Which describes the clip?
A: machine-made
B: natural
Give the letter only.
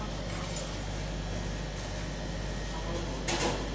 B